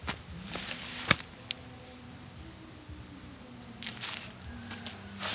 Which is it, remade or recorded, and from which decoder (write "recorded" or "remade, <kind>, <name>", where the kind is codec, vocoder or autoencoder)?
recorded